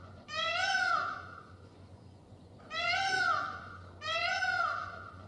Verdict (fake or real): fake